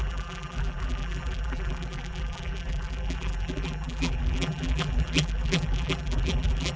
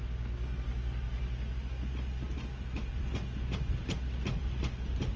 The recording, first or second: second